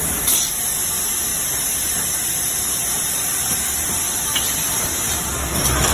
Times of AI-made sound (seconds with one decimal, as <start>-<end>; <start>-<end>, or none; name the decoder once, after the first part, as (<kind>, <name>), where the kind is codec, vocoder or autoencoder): none

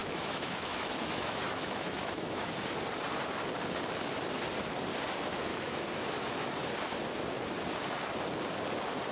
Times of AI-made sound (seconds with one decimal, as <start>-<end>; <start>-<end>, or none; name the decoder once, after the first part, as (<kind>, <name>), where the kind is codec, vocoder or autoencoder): 0.0-2.5 (autoencoder, DAC-VAE); 5.5-6.7

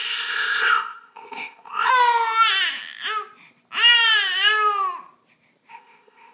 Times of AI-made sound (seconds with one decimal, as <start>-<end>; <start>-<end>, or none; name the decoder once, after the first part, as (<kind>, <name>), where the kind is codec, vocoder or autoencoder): 0.0-1.9 (codec, ZipCodec); 5.7-6.3

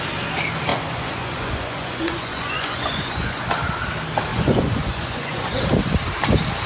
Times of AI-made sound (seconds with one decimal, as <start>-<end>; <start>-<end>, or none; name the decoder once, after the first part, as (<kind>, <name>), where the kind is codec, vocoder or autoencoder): 0.7-3.4 (vocoder, Vocos); 4.3-5.6

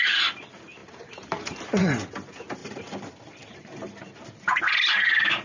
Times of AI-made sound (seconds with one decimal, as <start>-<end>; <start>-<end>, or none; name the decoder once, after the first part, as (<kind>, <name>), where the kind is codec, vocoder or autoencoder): 0.8-1.6 (vocoder, BigVGAN v2); 2.6-4.6

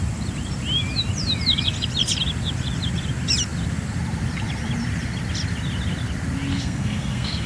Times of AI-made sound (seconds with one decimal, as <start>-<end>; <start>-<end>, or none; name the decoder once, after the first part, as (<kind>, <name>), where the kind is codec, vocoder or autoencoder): 6.5-7.5 (codec, SNAC)